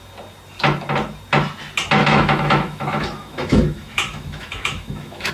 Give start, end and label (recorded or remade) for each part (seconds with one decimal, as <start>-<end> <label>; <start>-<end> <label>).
0.0-2.0 recorded; 2.0-5.3 remade